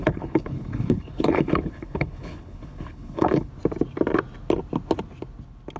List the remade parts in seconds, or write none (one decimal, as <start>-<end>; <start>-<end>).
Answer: 0.0-3.5